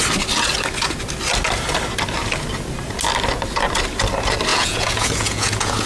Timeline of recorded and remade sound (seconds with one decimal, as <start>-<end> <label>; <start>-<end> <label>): 0.0-4.5 recorded; 4.5-5.9 remade

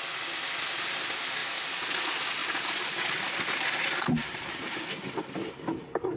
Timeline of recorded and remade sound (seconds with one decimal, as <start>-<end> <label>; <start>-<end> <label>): 0.0-1.4 recorded; 1.4-2.0 remade; 2.0-2.4 recorded; 2.4-3.6 remade; 3.6-6.2 recorded

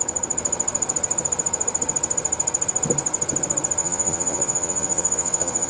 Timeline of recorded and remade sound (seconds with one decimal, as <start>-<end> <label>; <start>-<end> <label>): 0.0-3.8 recorded; 3.8-5.7 remade

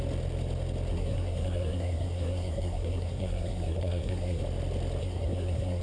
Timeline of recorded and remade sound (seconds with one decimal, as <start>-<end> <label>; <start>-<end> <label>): 0.0-0.9 recorded; 0.9-4.4 remade; 4.4-5.0 recorded; 5.0-5.8 remade

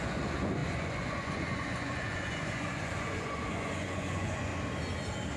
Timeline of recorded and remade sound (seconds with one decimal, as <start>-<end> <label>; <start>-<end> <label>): 0.0-4.5 remade; 4.5-5.4 recorded